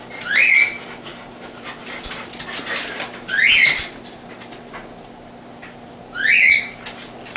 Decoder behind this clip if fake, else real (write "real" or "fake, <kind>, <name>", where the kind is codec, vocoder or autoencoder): real